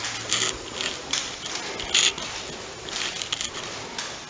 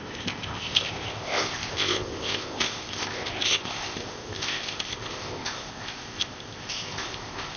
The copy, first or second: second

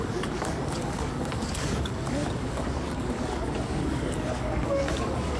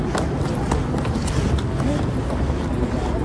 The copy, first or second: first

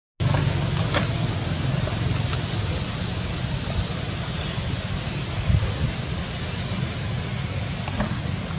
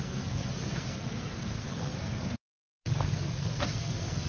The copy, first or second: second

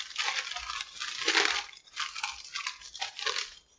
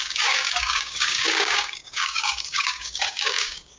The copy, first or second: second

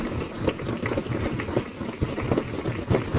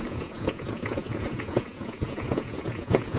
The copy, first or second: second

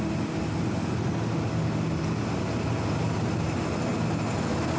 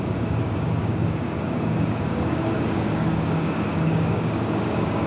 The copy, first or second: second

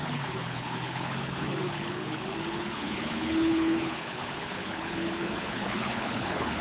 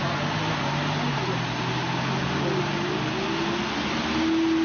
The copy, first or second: first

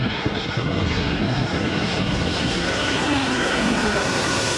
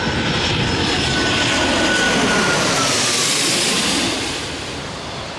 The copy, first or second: first